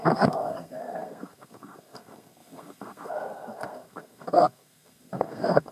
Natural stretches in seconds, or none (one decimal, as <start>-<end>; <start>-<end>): none